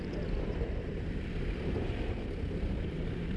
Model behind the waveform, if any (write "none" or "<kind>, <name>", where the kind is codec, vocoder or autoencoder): vocoder, BigVGAN v2